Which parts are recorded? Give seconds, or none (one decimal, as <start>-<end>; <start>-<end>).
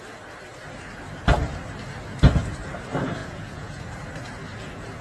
0.0-3.2; 3.8-5.0